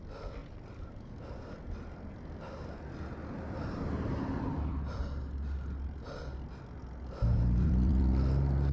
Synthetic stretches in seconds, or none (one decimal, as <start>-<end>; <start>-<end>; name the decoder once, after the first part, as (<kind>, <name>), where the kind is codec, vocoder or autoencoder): 0.4-1.2 (vocoder, BigVGAN v2)